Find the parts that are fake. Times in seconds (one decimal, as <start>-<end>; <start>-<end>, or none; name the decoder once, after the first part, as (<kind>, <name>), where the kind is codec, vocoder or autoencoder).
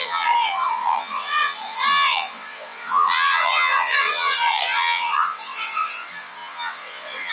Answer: 0.0-7.3 (vocoder, WaveNeXt)